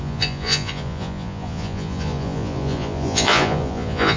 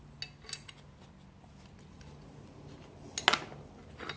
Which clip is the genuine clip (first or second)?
second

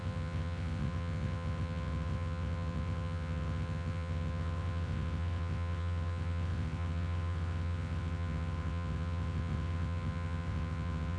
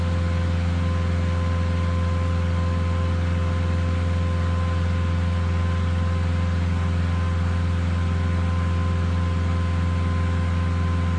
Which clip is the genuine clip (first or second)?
second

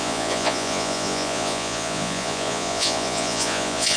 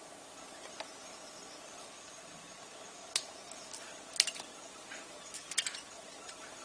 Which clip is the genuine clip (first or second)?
second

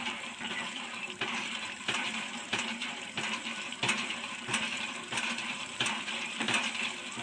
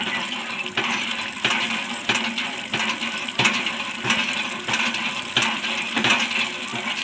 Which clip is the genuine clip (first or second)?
second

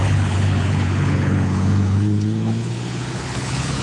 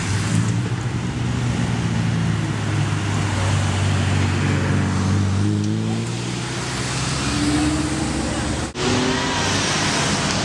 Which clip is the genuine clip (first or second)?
second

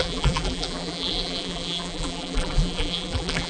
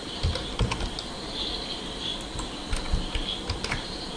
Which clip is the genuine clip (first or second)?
second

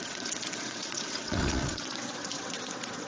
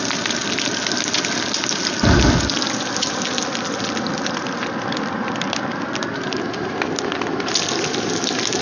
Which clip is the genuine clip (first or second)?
second